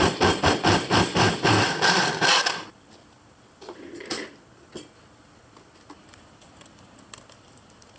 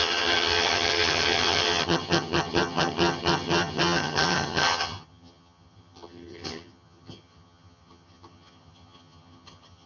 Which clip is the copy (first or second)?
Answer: second